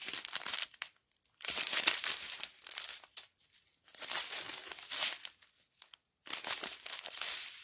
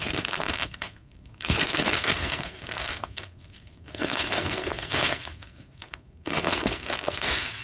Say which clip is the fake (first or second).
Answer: second